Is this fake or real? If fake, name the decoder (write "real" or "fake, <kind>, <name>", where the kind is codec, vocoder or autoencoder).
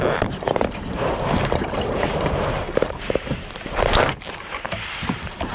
fake, vocoder, BigVGAN v2